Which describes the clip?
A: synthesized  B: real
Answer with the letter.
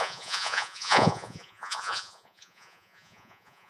A